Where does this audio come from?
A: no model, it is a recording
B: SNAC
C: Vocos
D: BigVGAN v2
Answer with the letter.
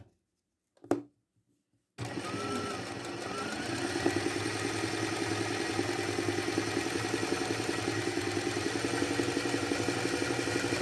A